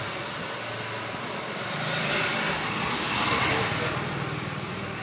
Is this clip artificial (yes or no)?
no